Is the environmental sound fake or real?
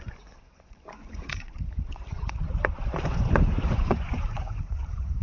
fake